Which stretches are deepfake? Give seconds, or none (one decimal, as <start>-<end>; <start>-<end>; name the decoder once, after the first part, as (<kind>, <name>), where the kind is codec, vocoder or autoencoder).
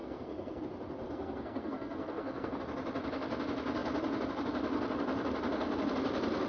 0.0-0.6 (codec, SNAC); 1.0-2.6